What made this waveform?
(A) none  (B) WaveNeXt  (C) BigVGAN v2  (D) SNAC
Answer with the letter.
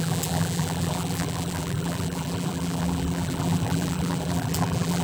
C